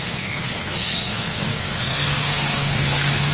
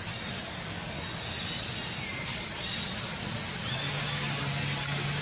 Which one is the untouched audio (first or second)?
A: second